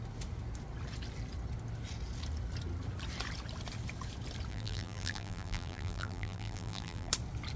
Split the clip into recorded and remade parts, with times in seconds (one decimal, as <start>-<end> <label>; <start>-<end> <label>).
0.0-4.5 recorded; 4.5-7.1 remade; 7.1-7.6 recorded